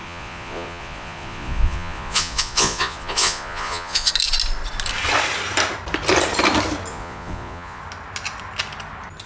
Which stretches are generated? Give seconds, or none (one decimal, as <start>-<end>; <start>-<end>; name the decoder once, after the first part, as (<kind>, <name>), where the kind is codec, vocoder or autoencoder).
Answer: 0.0-4.1 (vocoder, Vocos); 6.9-7.8